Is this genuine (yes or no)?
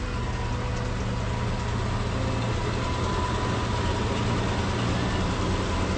yes